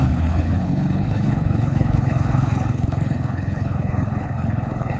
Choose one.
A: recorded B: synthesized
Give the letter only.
B